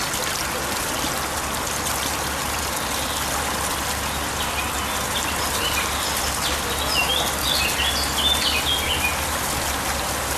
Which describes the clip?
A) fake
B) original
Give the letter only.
B